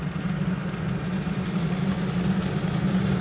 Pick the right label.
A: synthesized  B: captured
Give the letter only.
B